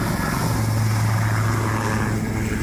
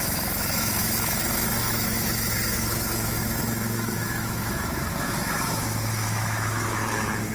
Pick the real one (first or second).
first